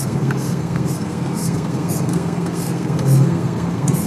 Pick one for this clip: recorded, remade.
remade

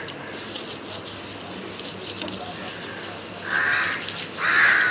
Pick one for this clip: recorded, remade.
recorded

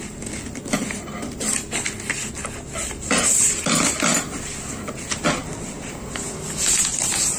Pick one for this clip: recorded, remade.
recorded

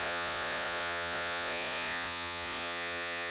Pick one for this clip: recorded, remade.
remade